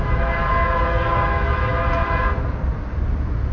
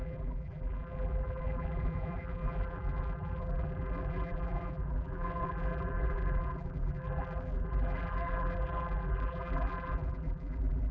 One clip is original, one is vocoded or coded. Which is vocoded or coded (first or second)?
second